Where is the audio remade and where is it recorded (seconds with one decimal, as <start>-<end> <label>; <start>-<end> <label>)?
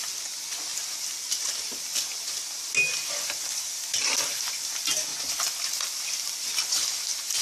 0.0-7.4 recorded